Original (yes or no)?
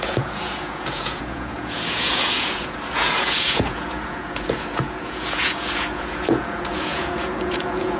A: no